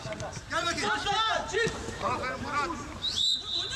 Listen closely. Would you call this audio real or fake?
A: fake